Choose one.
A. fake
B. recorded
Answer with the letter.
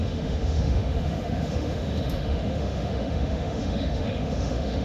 A